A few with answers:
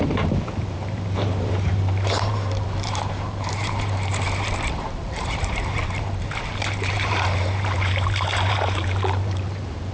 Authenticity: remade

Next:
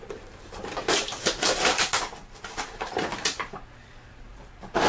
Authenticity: remade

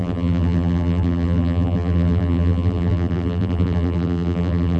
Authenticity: remade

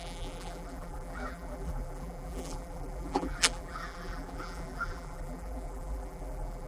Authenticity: remade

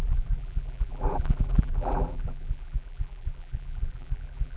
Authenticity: remade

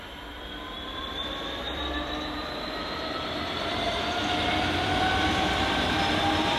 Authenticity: remade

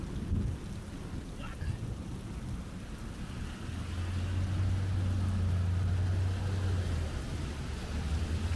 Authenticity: recorded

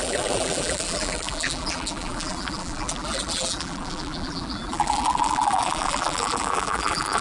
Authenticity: remade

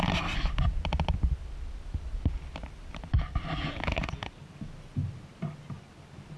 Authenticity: recorded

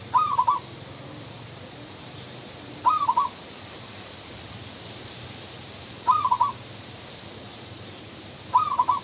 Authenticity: remade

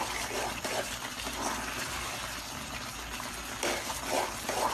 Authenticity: recorded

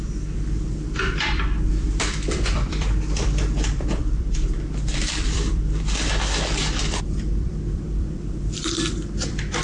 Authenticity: remade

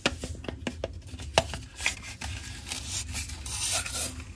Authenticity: recorded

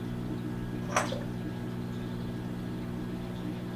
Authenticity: recorded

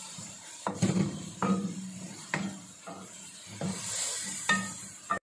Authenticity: remade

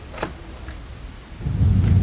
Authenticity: recorded